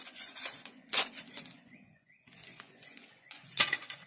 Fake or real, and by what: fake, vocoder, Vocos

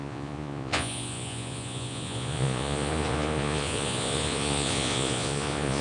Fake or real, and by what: fake, vocoder, Vocos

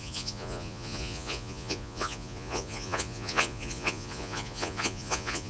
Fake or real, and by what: fake, vocoder, Vocos